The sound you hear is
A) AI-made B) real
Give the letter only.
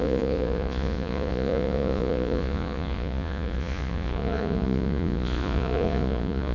A